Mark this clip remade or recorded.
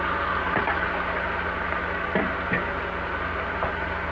recorded